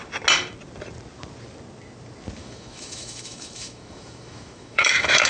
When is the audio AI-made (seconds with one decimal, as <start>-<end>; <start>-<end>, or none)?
2.4-5.3